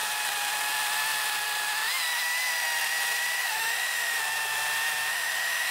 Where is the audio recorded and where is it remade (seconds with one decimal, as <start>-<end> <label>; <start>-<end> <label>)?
0.0-3.4 recorded; 3.4-4.1 remade; 4.1-5.1 recorded; 5.1-5.7 remade